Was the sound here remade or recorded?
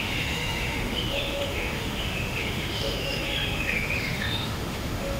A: remade